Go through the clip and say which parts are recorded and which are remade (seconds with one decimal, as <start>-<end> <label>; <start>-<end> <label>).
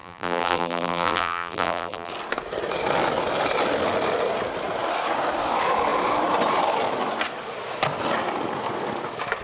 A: 0.0-2.1 remade; 2.1-9.4 recorded